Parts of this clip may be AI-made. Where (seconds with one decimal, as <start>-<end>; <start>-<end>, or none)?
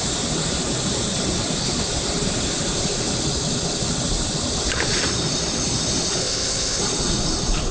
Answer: 6.2-6.8